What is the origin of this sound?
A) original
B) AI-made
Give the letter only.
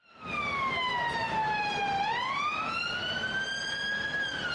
A